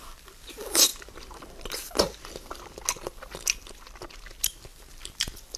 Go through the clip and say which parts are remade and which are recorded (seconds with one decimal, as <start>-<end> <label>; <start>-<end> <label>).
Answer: 0.0-4.7 recorded; 4.7-5.6 remade